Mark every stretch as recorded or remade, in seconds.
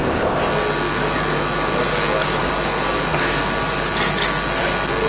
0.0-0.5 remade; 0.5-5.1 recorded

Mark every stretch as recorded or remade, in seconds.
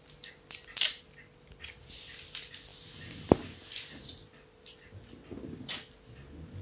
0.0-6.6 recorded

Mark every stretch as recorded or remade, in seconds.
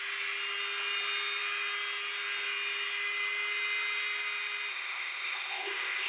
0.0-4.7 recorded; 4.7-6.1 remade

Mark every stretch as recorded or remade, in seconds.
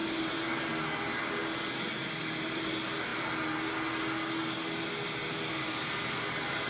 0.0-6.7 recorded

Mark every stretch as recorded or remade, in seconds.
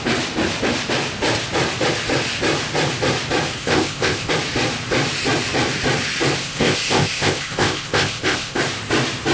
0.0-3.6 recorded; 3.6-4.3 remade; 4.3-6.4 recorded; 6.4-8.6 remade; 8.6-9.3 recorded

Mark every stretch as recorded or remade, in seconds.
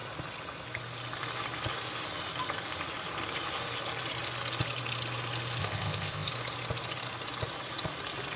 0.0-5.6 recorded; 5.6-6.3 remade; 6.3-8.4 recorded